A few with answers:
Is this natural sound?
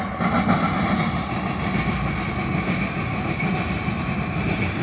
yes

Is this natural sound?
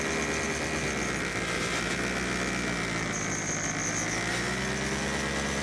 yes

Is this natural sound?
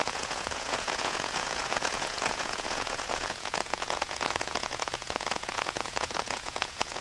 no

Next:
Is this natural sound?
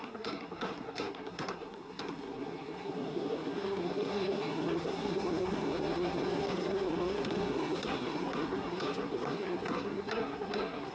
no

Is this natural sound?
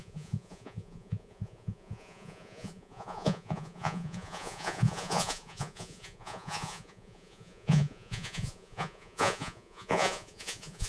no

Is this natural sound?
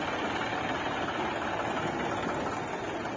yes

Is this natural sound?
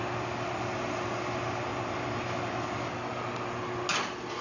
yes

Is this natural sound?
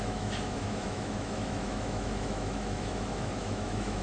no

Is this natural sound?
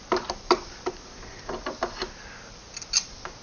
yes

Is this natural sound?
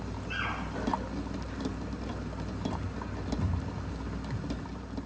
yes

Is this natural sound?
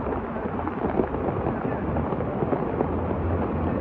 yes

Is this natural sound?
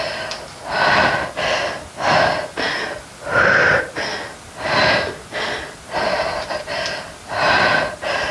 yes